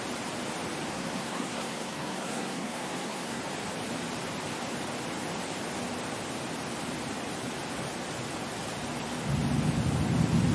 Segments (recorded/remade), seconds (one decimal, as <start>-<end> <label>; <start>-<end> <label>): 0.0-0.9 recorded; 0.9-3.4 remade; 3.4-10.5 recorded